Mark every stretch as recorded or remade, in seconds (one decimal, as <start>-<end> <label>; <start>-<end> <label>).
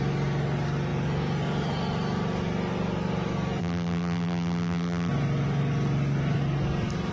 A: 0.0-3.6 recorded; 3.6-5.1 remade; 5.1-7.1 recorded